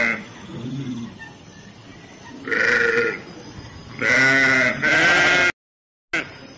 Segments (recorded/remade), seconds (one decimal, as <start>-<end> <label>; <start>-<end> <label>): 0.0-6.6 recorded

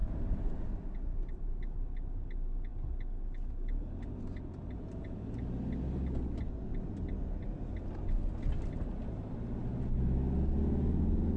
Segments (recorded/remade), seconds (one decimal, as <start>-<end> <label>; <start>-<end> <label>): 0.0-0.6 remade; 0.6-11.4 recorded